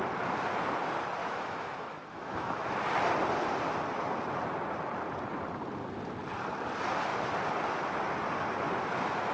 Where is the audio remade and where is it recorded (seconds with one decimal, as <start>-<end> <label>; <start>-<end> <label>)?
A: 0.0-1.2 recorded; 1.2-2.8 remade; 2.8-9.3 recorded